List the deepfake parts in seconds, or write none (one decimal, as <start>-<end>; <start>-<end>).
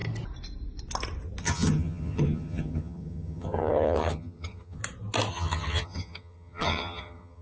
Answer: 1.4-4.8; 5.3-7.4